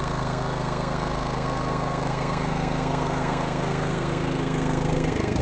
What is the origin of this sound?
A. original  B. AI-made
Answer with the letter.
B